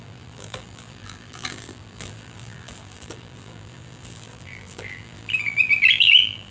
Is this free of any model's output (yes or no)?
no